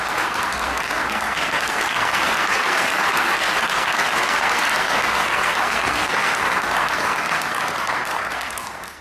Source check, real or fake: fake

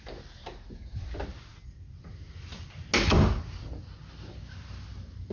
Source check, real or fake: real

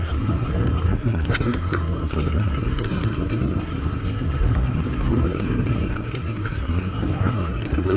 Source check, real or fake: fake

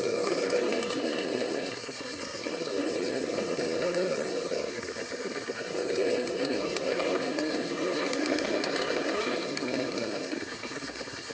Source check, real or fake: fake